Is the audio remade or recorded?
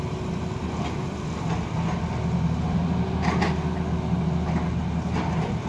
recorded